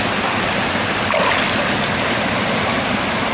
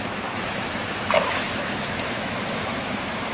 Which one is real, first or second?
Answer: first